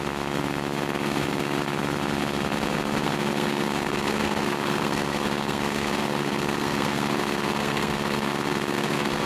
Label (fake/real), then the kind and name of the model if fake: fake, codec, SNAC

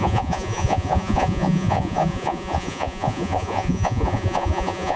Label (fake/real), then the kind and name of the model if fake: fake, vocoder, Vocos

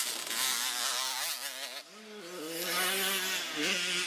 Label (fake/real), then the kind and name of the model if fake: real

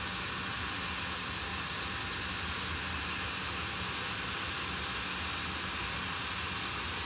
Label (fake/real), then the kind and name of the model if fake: real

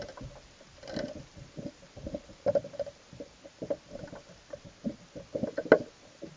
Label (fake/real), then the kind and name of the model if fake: real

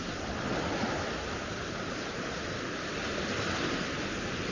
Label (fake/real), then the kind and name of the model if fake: real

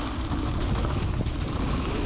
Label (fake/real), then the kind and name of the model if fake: real